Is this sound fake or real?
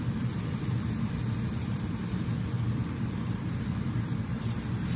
fake